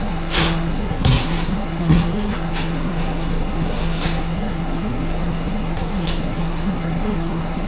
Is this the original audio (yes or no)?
no